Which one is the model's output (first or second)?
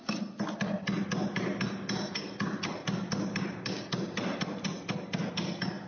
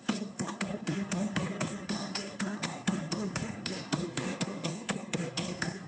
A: second